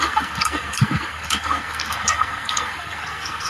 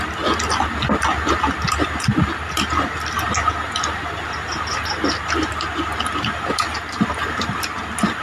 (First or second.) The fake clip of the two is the first